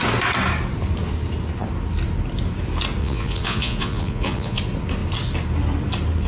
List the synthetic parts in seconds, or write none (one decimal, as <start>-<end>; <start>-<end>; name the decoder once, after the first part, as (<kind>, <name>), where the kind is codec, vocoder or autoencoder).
3.0-4.6 (vocoder, Vocos)